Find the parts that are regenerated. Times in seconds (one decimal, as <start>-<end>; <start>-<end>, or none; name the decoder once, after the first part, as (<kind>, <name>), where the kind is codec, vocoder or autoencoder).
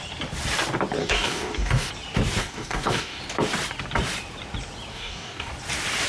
1.0-1.9 (codec, DAC); 2.4-3.2; 4.9-5.5